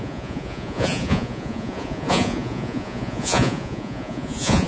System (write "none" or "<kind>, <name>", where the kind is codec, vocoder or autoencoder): vocoder, Vocos